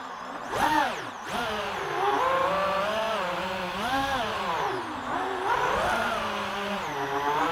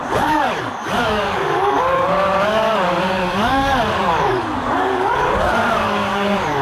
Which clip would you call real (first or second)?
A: first